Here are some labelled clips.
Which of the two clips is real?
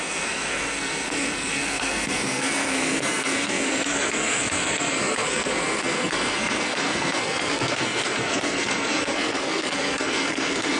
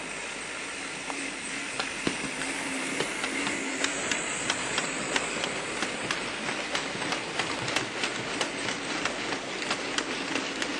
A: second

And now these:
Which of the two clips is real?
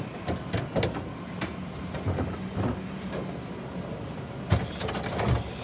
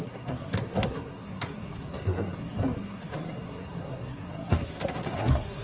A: first